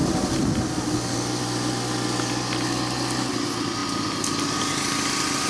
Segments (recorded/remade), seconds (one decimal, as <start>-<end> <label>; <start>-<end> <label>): 0.0-5.5 recorded